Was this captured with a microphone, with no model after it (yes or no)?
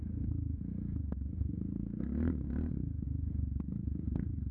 no